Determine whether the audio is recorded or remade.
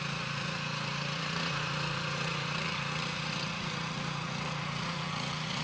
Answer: remade